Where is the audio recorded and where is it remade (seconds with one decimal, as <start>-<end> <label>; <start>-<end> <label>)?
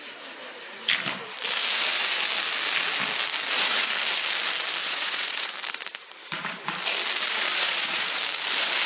0.0-4.8 recorded; 4.8-5.5 remade; 5.5-7.5 recorded; 7.5-8.2 remade; 8.2-8.8 recorded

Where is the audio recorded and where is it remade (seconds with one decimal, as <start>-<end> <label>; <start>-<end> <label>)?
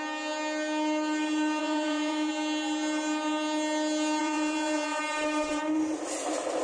0.0-1.6 recorded; 1.6-2.3 remade; 2.3-4.2 recorded; 4.2-5.0 remade; 5.0-6.6 recorded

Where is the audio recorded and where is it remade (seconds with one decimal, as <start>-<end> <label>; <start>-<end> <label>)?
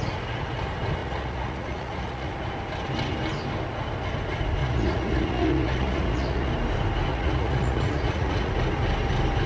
0.0-1.0 recorded; 1.0-2.3 remade; 2.3-4.6 recorded; 4.6-6.5 remade; 6.5-7.1 recorded; 7.1-8.5 remade; 8.5-9.5 recorded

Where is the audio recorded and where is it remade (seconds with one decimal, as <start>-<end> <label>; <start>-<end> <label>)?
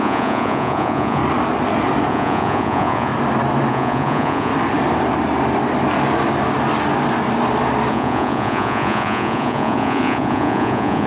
0.0-1.2 remade; 1.2-2.1 recorded; 2.1-3.1 remade; 3.1-3.7 recorded; 3.7-4.5 remade; 4.5-7.9 recorded; 7.9-11.1 remade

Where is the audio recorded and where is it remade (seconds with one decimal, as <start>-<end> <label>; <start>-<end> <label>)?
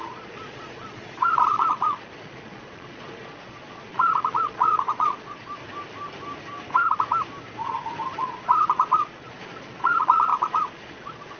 0.0-5.6 remade; 5.6-8.2 recorded; 8.2-11.4 remade